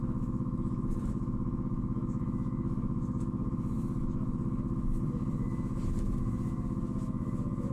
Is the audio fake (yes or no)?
yes